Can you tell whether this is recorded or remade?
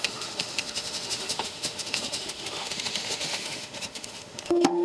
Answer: remade